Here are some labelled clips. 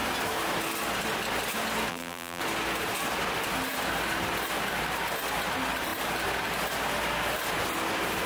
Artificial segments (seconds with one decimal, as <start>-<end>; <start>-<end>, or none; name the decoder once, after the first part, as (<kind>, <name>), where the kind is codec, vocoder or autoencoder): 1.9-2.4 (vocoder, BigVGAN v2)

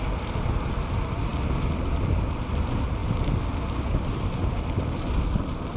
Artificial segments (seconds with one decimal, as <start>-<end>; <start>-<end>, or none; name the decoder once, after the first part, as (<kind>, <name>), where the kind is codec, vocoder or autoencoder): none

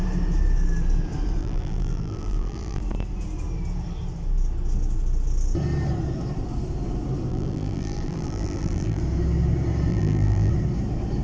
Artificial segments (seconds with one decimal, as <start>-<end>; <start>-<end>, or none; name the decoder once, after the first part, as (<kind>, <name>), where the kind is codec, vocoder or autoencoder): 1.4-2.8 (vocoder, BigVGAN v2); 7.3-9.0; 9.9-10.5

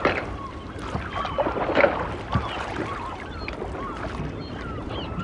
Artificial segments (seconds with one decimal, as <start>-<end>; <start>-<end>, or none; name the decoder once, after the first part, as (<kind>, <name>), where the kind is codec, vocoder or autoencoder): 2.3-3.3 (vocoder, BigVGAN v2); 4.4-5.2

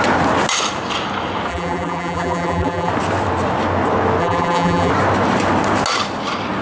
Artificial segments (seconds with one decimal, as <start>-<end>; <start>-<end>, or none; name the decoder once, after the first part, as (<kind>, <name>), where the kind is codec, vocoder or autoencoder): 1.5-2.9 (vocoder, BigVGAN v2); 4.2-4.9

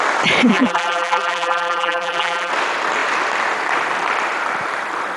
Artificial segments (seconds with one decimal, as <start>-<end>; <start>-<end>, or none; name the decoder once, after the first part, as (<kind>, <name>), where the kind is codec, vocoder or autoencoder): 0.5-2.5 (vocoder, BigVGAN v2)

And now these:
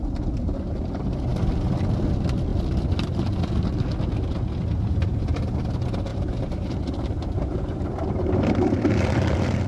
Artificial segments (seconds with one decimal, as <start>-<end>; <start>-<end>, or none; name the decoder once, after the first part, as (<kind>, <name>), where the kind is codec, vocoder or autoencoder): 6.1-8.9 (vocoder, BigVGAN v2)